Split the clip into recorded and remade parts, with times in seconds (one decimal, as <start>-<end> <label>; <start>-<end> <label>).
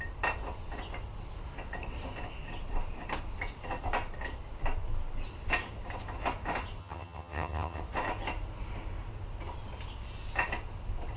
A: 0.0-6.8 recorded; 6.8-7.8 remade; 7.8-11.2 recorded